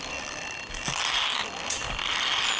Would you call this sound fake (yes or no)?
no